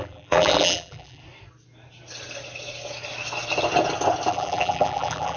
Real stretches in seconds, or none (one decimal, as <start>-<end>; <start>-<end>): 1.2-4.3